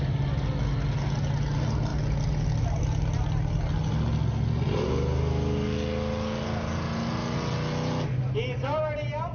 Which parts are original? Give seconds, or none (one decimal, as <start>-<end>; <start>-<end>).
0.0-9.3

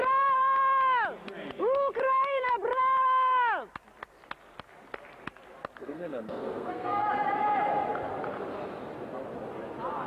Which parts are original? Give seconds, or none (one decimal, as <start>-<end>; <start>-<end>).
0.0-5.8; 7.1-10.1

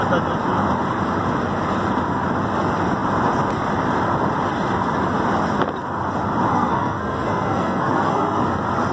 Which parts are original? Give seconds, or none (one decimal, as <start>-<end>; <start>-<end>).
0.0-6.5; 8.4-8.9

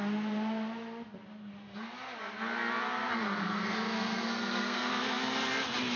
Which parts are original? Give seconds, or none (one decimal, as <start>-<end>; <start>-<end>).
0.0-3.4; 4.9-6.0

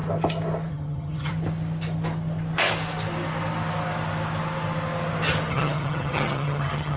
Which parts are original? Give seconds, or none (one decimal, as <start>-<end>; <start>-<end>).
0.0-0.7; 1.3-5.5

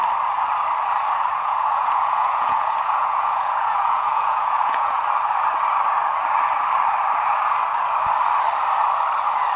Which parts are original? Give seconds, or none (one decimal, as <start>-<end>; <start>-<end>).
0.0-1.3; 5.0-9.6

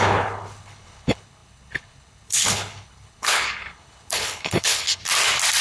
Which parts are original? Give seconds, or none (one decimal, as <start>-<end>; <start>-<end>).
5.0-5.6